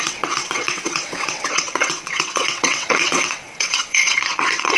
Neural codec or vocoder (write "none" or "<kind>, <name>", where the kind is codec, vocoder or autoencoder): vocoder, WaveNeXt